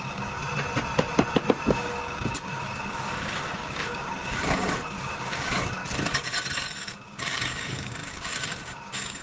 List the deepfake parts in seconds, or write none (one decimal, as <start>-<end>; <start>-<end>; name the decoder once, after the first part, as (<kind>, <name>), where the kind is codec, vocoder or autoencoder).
0.0-0.4 (codec, DAC); 1.7-5.8; 6.8-9.2